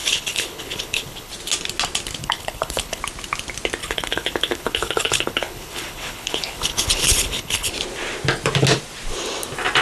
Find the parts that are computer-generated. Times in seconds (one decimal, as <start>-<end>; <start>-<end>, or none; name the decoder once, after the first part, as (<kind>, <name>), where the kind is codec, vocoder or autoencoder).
0.0-1.3 (codec, HILCodec); 2.2-3.0; 3.8-7.7